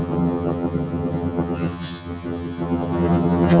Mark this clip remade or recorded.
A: remade